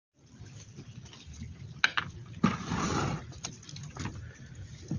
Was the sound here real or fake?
real